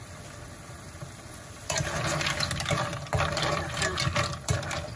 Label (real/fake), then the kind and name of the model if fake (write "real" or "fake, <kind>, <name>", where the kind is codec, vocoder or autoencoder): real